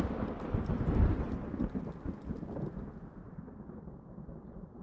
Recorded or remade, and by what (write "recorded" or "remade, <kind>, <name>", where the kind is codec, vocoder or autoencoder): recorded